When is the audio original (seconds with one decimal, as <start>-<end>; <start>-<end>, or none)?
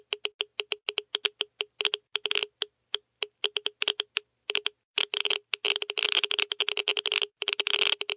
0.0-8.2